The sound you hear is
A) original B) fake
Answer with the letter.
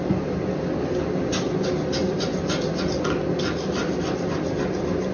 A